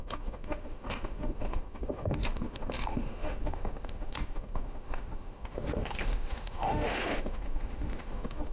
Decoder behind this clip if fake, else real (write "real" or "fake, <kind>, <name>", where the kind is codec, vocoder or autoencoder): fake, autoencoder, DAC-VAE